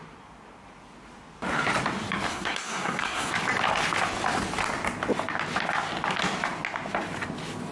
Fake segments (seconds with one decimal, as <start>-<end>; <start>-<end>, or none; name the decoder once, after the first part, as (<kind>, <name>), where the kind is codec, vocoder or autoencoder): 2.3-3.3 (codec, SNAC)